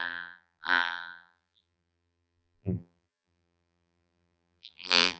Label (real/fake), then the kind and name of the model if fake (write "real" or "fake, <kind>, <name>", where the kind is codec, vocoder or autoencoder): fake, vocoder, BigVGAN v2